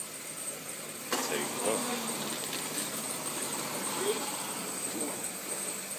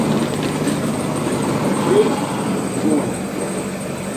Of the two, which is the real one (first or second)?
second